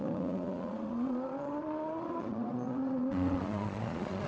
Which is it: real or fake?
fake